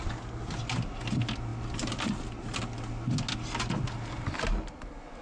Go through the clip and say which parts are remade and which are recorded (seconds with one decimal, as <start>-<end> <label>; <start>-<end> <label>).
0.0-5.2 recorded